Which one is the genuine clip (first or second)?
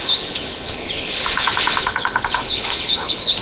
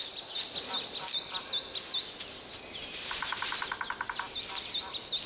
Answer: second